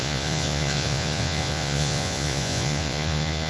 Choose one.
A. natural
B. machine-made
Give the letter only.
B